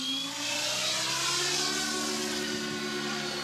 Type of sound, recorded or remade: recorded